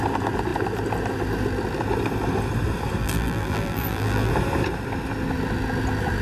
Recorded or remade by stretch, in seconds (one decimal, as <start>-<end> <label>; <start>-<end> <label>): 0.0-3.0 recorded; 3.0-4.3 remade; 4.3-6.2 recorded